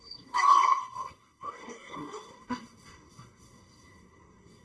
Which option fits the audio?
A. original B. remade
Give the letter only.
B